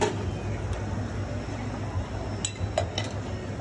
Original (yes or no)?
yes